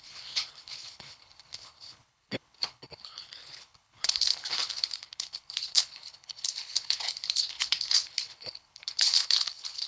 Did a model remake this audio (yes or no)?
yes